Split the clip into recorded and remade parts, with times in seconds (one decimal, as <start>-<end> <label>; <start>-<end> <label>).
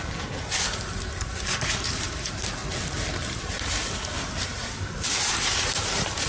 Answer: 0.0-0.7 recorded; 0.7-2.6 remade; 2.6-4.4 recorded; 4.4-6.3 remade